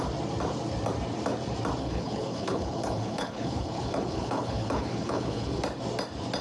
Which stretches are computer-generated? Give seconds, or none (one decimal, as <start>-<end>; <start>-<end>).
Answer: 1.8-5.6